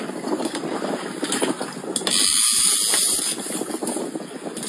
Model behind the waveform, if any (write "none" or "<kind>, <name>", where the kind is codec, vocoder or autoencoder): none